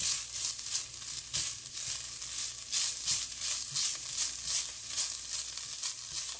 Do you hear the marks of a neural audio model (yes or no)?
no